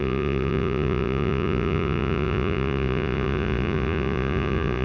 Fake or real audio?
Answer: fake